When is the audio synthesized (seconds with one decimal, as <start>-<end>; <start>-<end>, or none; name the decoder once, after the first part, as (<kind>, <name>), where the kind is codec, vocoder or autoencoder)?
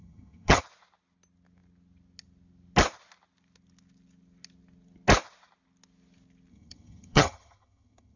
0.0-0.6 (vocoder, HiFi-GAN); 6.5-8.2